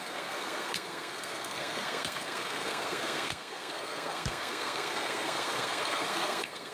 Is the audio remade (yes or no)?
yes